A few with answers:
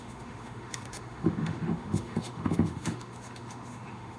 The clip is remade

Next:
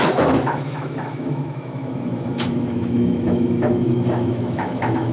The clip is remade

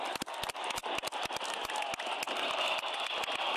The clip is remade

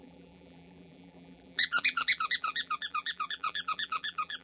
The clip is remade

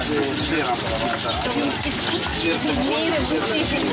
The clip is recorded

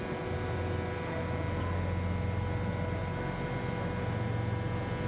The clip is recorded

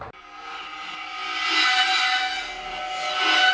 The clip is recorded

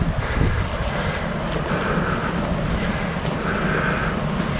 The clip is recorded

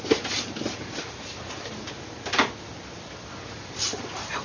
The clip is recorded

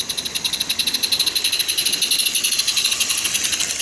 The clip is recorded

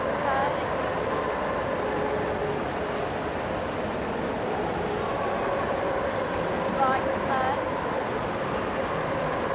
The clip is recorded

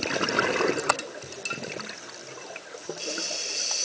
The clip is recorded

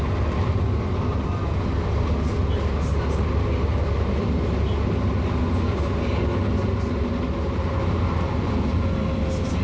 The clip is recorded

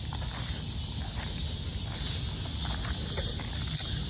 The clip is recorded